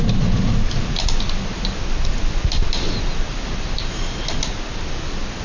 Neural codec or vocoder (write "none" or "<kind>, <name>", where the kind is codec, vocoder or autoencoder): none